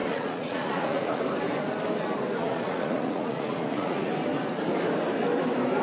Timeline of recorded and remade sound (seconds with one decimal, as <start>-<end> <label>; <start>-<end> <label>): 0.0-1.2 remade; 1.2-2.4 recorded; 2.4-4.1 remade; 4.1-5.8 recorded